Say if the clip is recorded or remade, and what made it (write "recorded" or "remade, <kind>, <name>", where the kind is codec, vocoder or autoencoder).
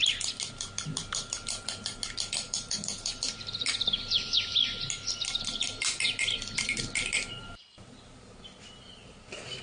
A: recorded